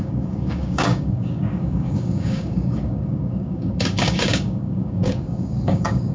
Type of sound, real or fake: fake